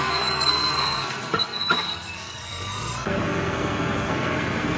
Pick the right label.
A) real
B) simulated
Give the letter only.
B